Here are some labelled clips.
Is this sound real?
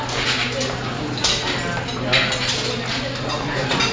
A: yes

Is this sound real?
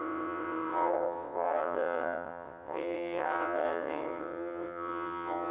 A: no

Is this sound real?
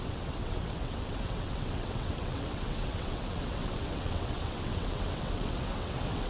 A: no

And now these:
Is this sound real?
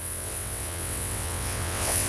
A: no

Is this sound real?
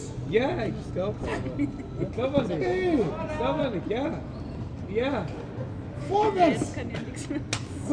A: yes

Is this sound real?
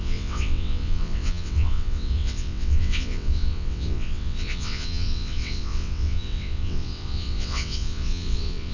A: no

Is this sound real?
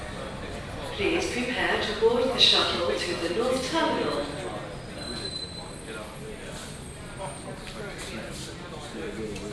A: yes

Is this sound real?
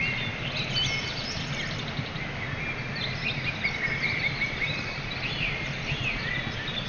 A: yes